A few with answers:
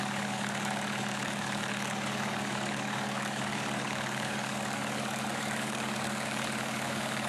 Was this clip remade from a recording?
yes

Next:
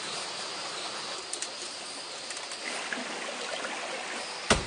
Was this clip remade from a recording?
no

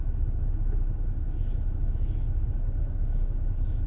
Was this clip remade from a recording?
no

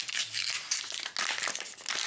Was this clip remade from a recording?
no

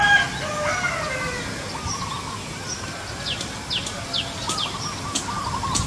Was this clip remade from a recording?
no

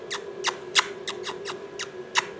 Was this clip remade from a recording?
no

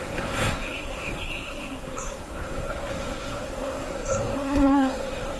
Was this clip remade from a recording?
yes